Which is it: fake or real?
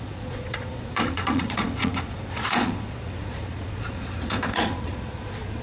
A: fake